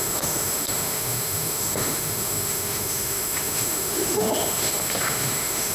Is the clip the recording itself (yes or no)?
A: no